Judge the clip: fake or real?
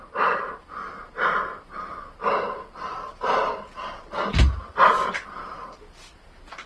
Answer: real